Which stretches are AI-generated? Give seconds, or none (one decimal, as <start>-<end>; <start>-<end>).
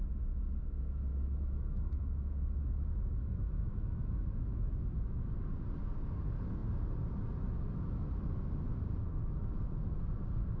1.1-5.3